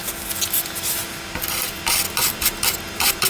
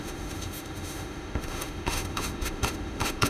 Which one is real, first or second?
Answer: first